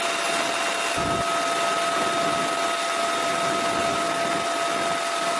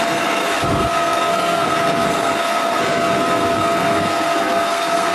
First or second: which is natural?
first